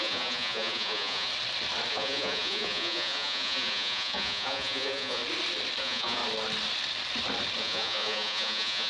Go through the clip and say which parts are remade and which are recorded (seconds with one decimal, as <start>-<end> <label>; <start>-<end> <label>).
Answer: 0.0-1.3 remade; 1.3-1.9 recorded; 1.9-5.2 remade; 5.2-5.8 recorded; 5.8-6.2 remade; 6.2-7.6 recorded; 7.6-8.9 remade